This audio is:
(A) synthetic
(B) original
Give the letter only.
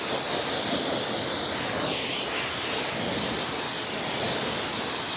B